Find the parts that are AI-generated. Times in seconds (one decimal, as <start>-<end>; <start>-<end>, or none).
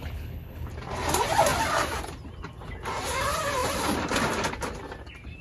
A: 0.0-0.7